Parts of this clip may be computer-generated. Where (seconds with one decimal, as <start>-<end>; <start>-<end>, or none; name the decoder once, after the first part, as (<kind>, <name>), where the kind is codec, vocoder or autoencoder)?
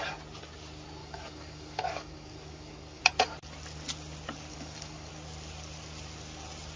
1.0-3.0 (codec, DAC); 4.5-5.1